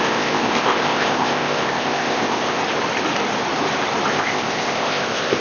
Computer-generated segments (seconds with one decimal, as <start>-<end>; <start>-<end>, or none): 0.0-2.6; 4.1-5.4